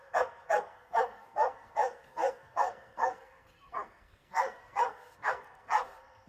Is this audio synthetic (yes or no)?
yes